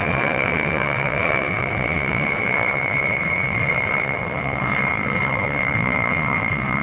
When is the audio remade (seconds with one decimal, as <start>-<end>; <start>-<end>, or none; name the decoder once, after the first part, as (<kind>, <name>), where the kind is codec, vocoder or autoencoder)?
0.0-6.8 (vocoder, WaveNeXt)